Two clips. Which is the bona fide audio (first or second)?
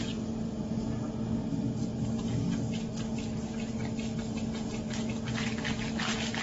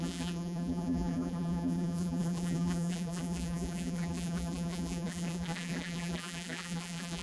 first